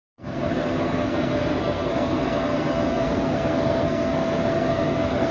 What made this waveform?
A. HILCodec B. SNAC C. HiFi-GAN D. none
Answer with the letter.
B